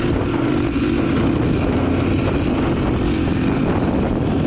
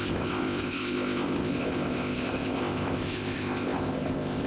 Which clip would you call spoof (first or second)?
second